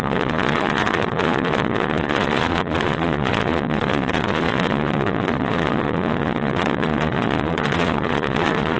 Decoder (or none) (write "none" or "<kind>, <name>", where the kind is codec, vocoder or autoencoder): vocoder, Vocos